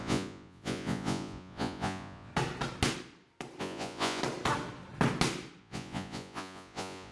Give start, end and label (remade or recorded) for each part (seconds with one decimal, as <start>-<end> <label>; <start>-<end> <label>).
0.0-2.3 remade; 2.3-3.6 recorded; 3.6-4.2 remade; 4.2-5.6 recorded; 5.6-7.1 remade